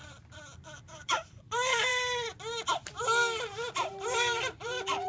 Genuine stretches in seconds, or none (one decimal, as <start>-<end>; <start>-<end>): 0.0-0.8; 1.9-3.9